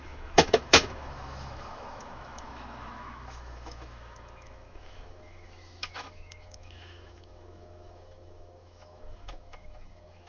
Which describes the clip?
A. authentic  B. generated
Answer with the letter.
B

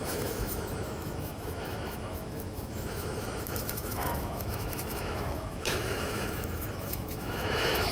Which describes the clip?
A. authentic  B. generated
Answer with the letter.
B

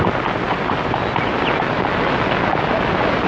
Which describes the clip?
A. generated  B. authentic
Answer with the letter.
B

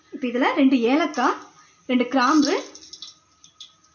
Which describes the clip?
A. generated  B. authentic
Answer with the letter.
B